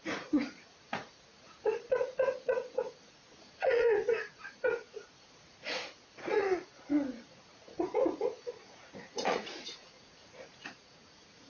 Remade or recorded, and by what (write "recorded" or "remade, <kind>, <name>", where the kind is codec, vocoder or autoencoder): remade, vocoder, Vocos